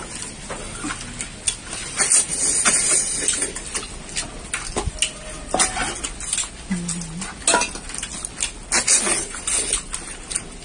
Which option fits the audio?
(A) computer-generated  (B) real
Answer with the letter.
B